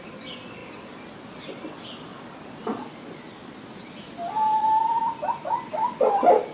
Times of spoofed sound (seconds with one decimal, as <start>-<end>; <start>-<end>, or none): none